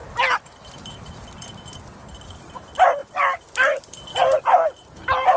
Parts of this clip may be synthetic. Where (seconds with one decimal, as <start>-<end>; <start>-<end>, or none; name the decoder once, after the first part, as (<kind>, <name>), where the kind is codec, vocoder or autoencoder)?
none